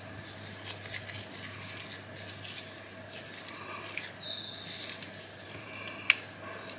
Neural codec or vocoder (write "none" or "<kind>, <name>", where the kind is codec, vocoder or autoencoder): none